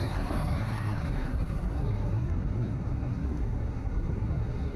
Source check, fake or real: fake